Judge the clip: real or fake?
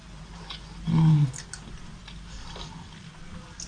real